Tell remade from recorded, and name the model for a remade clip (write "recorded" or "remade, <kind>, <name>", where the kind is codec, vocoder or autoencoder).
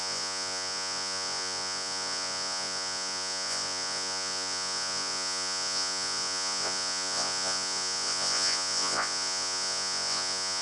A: remade, vocoder, Vocos